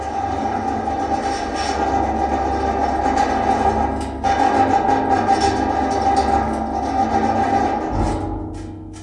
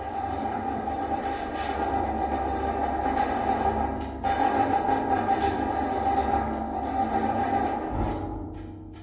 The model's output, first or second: second